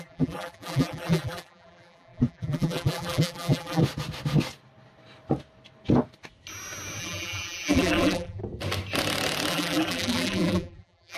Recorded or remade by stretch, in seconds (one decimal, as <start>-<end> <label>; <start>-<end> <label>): 0.0-3.8 remade; 3.8-7.0 recorded; 7.0-8.4 remade; 8.4-9.5 recorded; 9.5-11.2 remade